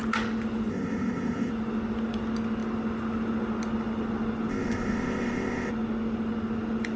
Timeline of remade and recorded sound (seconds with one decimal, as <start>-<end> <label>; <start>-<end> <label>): 0.0-0.7 recorded; 0.7-1.5 remade; 1.5-4.5 recorded; 4.5-5.7 remade; 5.7-7.0 recorded